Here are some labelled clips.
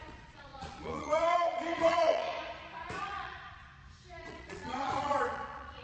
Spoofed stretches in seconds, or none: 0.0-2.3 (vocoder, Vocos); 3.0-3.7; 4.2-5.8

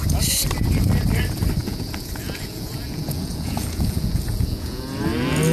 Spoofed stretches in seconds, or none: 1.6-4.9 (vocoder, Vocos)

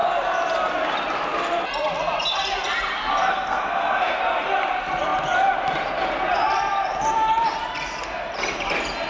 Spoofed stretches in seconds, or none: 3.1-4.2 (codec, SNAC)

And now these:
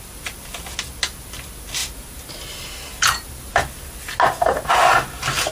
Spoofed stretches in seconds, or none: none